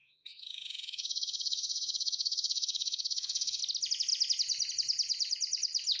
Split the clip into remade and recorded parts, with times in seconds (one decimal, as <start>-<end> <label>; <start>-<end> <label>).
0.0-3.6 remade; 3.6-6.0 recorded